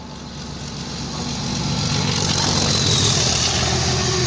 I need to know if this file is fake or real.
real